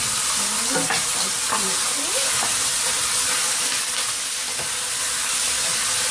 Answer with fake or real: real